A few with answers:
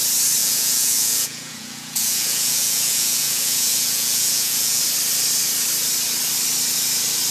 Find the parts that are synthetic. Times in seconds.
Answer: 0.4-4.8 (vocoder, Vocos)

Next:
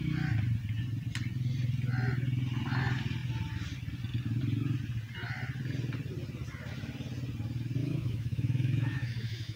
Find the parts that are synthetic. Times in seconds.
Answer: 7.8-9.6 (autoencoder, DAC-VAE)

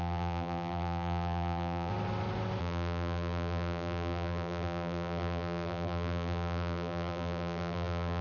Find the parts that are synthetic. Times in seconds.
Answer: 0.0-1.9 (vocoder, BigVGAN v2); 2.6-8.2

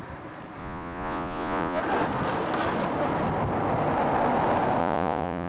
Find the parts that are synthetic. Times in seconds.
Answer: 0.6-1.8 (vocoder, Vocos); 4.8-5.5

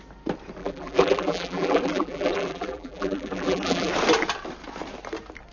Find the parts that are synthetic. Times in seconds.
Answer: 0.6-3.9 (vocoder, BigVGAN v2)